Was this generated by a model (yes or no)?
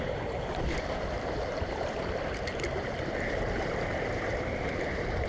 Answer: yes